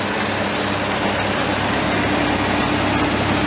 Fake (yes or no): no